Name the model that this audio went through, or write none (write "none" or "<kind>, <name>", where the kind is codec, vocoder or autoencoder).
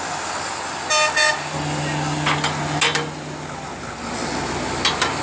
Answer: none